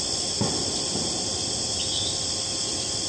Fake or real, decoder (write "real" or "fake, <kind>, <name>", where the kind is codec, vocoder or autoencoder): real